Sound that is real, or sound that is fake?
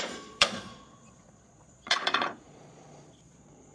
fake